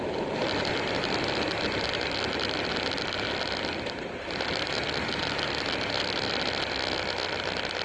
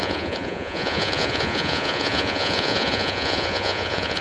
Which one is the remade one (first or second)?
second